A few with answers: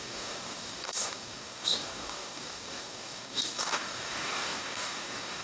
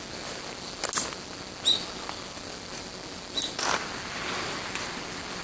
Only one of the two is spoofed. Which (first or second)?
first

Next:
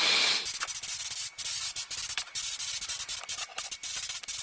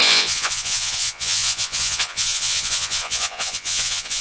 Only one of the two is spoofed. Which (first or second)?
second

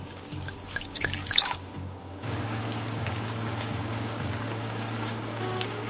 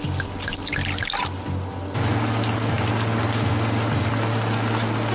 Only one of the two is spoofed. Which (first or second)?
first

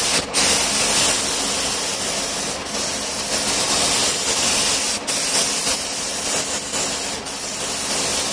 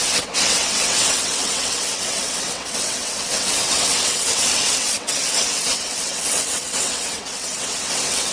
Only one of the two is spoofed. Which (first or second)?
second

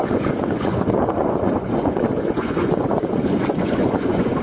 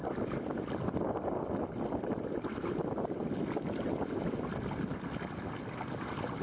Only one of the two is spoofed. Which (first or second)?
first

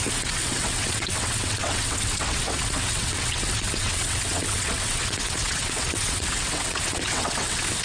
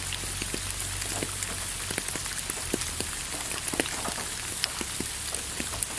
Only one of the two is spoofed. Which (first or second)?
first